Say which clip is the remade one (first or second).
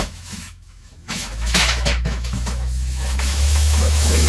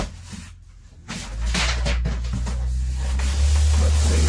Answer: first